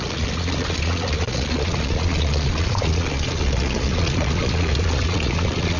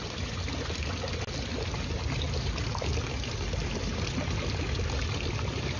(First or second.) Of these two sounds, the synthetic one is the first